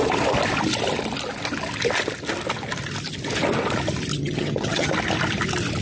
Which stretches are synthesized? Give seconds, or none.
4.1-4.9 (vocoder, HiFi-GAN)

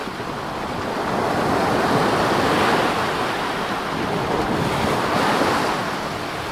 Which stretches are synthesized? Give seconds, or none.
none

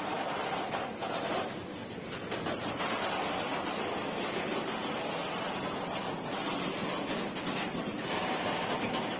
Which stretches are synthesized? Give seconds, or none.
0.0-1.0 (vocoder, BigVGAN v2); 1.6-3.5; 6.0-6.4; 7.6-9.2

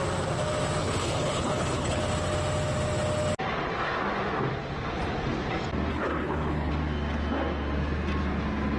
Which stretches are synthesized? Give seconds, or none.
0.8-2.0 (codec, HILCodec); 5.9-6.7

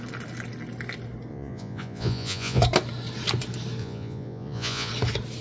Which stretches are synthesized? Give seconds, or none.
1.3-2.6 (vocoder, Vocos); 3.8-4.9